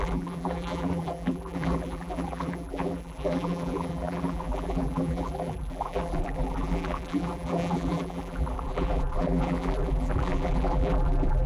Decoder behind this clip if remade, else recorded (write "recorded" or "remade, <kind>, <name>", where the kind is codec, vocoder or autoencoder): remade, vocoder, BigVGAN v2